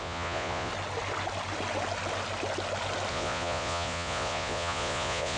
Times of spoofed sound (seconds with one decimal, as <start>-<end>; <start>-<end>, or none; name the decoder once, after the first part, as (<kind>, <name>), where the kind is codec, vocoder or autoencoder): 0.0-0.7 (vocoder, Vocos); 3.1-5.4